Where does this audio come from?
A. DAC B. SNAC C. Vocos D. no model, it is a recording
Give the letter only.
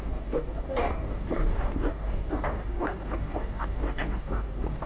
A